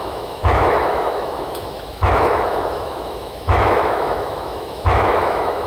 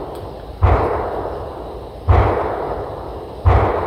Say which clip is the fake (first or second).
first